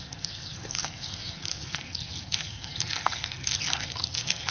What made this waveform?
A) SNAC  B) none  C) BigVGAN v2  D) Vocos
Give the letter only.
A